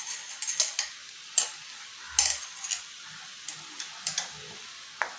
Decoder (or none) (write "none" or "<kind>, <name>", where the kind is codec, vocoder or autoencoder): none